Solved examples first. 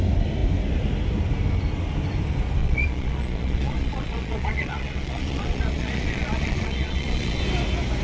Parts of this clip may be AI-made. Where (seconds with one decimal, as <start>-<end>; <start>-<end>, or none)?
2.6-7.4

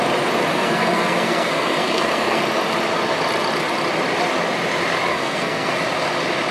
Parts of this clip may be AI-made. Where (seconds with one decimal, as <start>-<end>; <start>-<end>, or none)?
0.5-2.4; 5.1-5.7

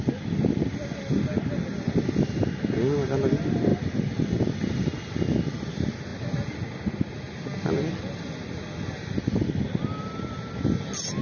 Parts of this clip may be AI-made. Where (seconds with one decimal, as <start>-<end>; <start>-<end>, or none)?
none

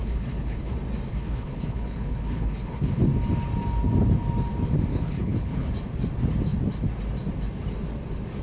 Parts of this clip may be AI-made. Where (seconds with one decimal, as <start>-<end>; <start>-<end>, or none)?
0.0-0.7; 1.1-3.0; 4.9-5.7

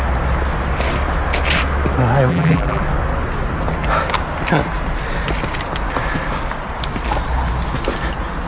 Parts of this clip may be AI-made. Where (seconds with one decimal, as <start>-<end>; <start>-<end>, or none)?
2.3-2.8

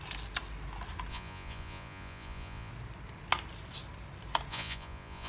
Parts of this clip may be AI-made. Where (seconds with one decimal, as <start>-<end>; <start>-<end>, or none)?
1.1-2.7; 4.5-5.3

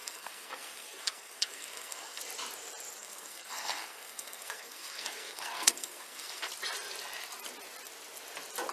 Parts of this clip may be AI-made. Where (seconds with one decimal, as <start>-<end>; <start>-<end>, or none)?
0.0-2.2; 3.0-6.5